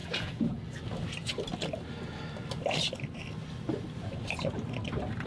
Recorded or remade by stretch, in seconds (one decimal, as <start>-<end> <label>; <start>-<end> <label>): 0.0-0.6 remade; 0.6-5.3 recorded